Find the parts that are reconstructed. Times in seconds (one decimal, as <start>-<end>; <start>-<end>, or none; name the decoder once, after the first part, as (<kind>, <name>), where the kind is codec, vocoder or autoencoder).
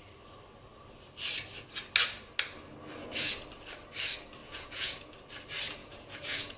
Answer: 4.4-5.1 (vocoder, Vocos); 5.8-6.6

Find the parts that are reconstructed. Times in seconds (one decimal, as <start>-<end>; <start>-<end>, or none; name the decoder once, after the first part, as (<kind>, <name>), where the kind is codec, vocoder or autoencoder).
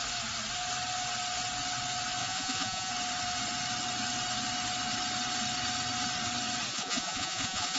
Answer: 2.2-2.9 (vocoder, Vocos); 6.7-7.8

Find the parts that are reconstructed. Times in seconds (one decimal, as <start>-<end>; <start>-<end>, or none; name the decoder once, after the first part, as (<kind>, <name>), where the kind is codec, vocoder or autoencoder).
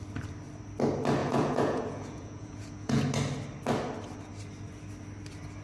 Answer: 1.2-3.0 (vocoder, Vocos)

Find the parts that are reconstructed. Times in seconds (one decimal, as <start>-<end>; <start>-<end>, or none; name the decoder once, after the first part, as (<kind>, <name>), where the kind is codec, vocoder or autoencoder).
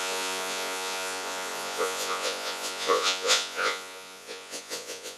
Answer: 0.0-5.2 (vocoder, Vocos)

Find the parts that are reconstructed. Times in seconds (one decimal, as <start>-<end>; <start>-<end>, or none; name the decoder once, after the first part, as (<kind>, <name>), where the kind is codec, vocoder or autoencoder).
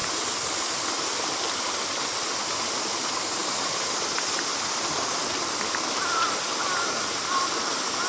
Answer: none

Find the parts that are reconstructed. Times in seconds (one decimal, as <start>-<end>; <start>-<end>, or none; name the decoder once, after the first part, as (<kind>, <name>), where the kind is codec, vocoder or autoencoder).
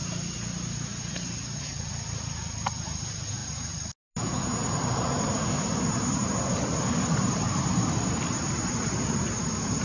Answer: none